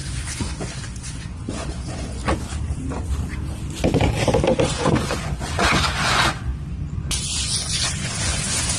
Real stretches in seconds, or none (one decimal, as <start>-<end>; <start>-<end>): 2.2-4.6